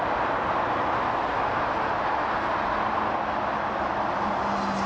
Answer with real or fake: real